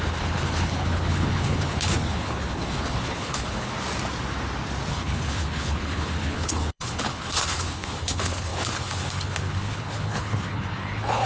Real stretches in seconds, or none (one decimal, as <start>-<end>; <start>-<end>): 3.7-4.9